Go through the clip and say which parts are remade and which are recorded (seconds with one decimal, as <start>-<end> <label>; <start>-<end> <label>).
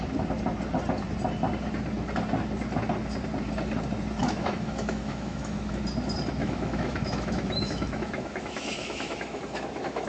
0.0-4.2 recorded; 4.2-5.8 remade; 5.8-6.4 recorded; 6.4-10.1 remade